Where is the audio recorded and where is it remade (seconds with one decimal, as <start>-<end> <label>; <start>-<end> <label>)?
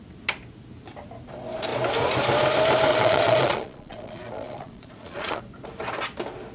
0.0-2.9 recorded; 2.9-5.4 remade; 5.4-6.5 recorded